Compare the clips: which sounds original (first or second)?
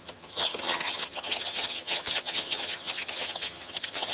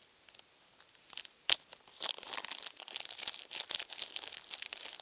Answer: second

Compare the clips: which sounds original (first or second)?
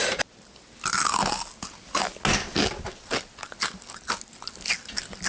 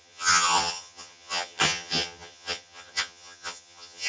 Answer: first